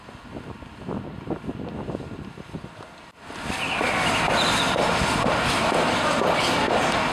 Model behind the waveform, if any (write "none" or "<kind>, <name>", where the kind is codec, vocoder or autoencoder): none